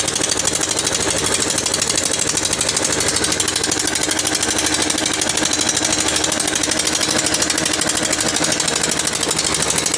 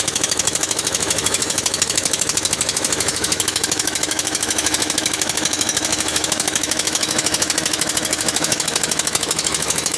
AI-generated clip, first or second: second